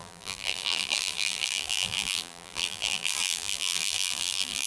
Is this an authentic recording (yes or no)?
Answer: no